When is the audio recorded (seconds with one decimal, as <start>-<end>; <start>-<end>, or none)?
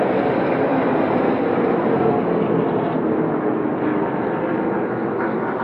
0.0-5.6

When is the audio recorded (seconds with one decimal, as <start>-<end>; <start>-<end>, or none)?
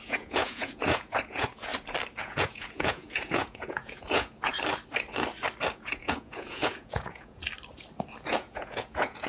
1.7-2.2; 4.5-5.7; 7.4-8.3